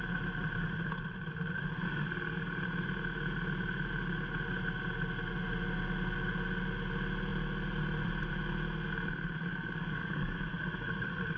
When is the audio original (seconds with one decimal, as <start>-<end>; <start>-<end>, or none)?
0.0-9.5; 10.4-11.4